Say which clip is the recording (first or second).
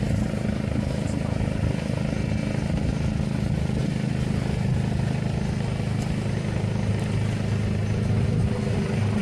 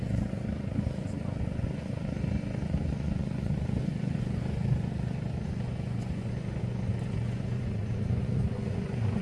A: first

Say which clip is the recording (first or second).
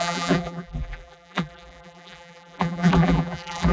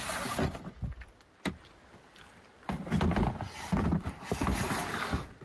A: second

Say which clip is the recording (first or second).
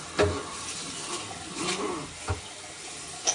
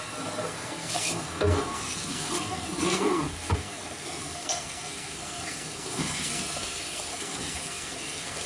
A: first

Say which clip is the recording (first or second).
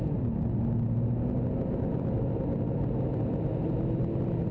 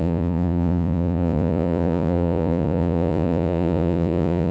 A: first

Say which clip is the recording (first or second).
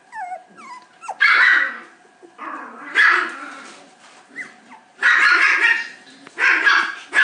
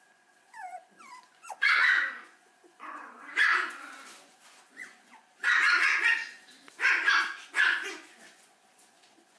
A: first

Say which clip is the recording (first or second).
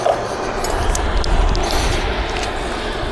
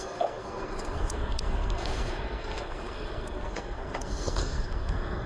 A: first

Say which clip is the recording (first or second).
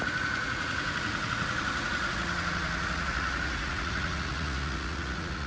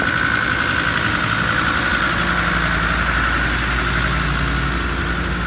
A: second